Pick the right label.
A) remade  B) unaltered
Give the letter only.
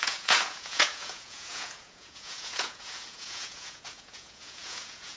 A